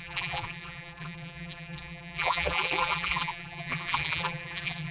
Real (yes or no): no